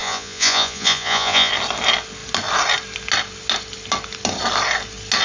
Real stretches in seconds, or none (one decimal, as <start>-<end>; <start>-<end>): 1.5-5.2